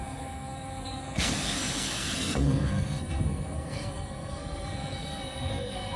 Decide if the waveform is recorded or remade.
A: remade